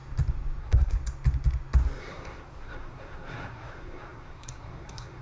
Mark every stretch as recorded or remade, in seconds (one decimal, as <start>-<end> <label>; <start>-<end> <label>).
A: 0.0-0.6 recorded; 0.6-1.0 remade; 1.0-2.0 recorded; 2.0-5.2 remade